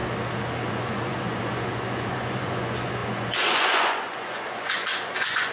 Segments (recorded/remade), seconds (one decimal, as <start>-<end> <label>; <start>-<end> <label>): 0.0-0.7 recorded; 0.7-5.5 remade